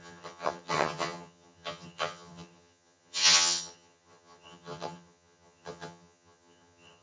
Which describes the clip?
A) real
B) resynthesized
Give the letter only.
B